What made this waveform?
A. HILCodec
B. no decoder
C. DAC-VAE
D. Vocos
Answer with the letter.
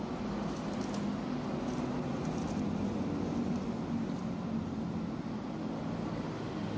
B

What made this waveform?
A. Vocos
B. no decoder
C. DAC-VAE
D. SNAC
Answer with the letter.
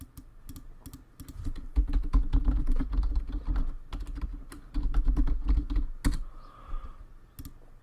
B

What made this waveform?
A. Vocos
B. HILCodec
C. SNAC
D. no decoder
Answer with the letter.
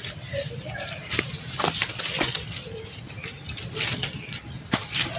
D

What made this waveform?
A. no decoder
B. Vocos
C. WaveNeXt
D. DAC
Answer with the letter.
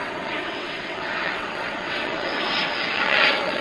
C